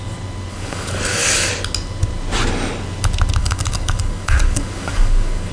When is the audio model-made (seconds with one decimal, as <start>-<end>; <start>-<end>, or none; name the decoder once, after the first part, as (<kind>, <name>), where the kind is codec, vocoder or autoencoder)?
0.5-1.5 (codec, DAC); 3.4-5.5